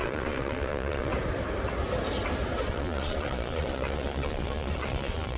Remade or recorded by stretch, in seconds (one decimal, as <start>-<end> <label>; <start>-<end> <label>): 0.0-1.1 remade; 1.1-2.7 recorded; 2.7-5.4 remade